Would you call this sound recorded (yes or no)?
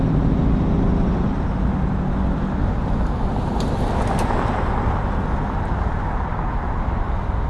yes